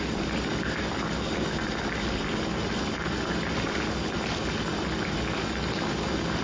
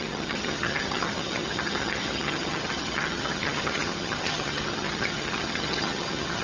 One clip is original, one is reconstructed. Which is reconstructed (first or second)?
second